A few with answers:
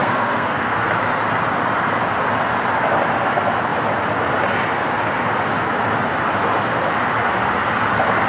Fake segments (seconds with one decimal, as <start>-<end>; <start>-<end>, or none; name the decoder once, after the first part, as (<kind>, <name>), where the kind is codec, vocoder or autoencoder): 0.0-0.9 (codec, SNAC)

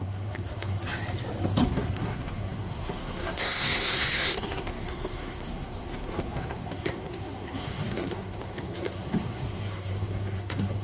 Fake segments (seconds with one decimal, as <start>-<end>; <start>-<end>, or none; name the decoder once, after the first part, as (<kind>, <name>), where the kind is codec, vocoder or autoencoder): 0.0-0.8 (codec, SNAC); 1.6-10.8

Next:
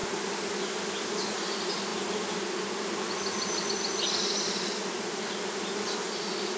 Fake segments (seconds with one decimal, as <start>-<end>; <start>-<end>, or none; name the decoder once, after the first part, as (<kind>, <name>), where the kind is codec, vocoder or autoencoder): none

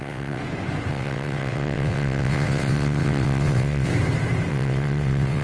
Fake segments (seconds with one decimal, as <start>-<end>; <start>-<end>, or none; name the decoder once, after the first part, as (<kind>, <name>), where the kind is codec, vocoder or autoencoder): 0.0-0.4 (vocoder, WaveNeXt); 0.9-3.9; 4.5-5.4

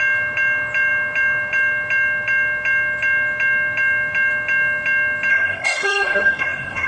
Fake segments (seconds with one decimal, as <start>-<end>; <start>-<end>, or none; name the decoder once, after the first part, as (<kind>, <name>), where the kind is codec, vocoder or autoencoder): 5.3-6.9 (codec, SNAC)

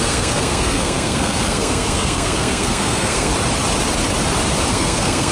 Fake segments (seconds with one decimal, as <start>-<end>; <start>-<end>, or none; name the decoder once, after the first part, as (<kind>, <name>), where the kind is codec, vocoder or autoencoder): 0.0-3.3 (codec, SNAC); 4.7-5.3

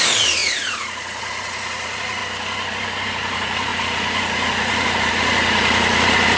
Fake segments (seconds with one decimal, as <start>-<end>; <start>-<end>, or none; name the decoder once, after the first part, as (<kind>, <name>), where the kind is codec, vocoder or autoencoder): 0.0-2.2 (vocoder, Vocos); 3.1-6.4

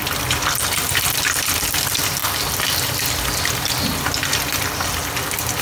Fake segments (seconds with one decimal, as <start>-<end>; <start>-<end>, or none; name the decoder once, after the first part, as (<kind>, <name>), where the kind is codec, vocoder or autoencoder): none